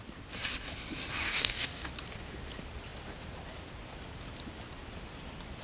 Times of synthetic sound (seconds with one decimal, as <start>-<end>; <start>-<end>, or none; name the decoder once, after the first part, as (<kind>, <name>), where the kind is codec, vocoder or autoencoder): 1.2-1.9 (codec, DAC)